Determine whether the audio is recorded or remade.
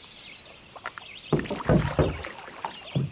recorded